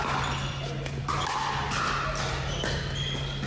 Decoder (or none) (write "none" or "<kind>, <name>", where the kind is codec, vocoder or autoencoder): none